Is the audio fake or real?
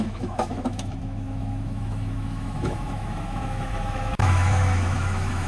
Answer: fake